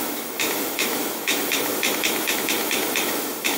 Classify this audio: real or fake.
fake